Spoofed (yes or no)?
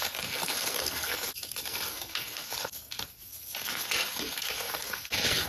yes